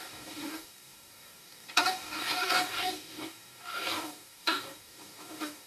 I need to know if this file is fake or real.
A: fake